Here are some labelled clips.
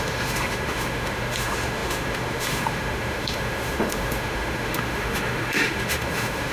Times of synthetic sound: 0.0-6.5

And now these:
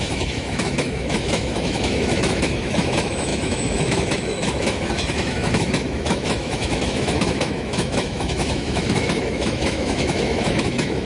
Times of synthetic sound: 0.0-11.1

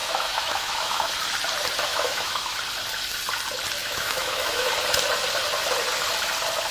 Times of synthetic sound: 0.0-1.1; 1.9-2.6; 3.8-4.7